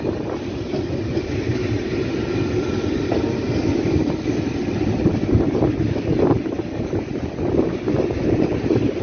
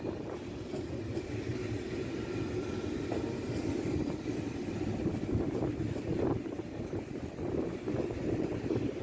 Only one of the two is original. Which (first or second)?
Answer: second